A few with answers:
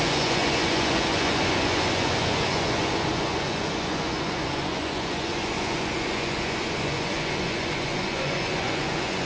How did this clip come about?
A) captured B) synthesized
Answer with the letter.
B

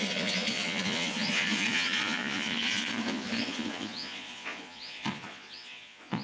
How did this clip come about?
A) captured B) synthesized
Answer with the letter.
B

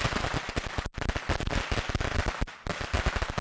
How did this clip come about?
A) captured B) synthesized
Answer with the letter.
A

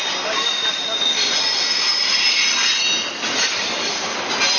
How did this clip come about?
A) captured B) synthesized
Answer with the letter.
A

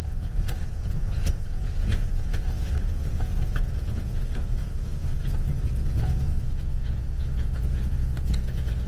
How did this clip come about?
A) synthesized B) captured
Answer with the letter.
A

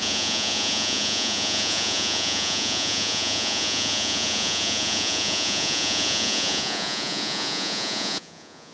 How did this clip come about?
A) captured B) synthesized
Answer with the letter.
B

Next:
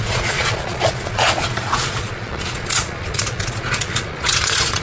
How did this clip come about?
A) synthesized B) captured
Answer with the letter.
A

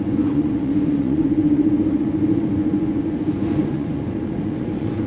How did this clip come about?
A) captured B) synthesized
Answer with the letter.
B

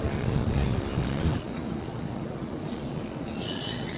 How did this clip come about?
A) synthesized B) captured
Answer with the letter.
A